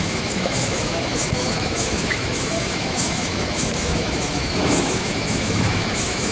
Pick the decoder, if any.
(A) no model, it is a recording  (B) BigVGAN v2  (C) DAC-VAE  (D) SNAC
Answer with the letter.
C